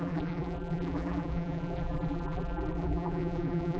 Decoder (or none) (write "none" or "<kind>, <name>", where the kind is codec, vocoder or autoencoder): vocoder, BigVGAN v2